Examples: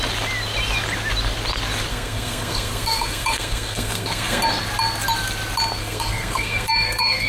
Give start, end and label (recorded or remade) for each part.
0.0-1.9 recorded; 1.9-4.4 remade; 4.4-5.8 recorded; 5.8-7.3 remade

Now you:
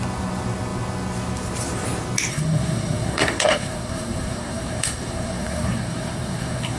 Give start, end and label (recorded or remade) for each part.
0.0-2.3 recorded; 2.3-6.8 remade

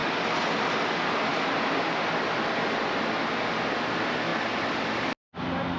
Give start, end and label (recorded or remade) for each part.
0.0-5.8 recorded